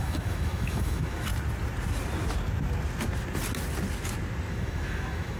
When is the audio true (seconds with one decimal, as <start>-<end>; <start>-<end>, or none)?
1.3-4.5